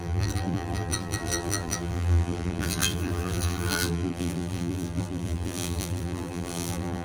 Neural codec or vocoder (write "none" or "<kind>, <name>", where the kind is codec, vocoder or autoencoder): vocoder, BigVGAN v2